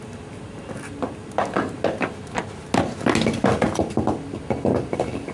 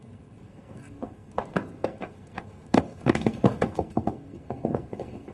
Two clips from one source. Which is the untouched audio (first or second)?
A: first